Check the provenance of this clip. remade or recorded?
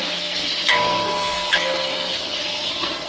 remade